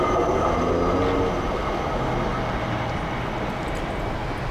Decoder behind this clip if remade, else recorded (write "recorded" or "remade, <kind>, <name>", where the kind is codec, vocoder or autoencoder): recorded